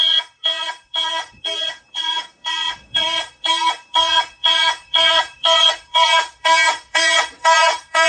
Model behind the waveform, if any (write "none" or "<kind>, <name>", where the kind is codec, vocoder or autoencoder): vocoder, Vocos